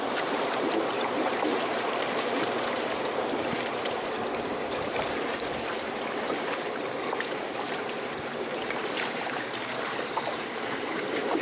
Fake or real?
fake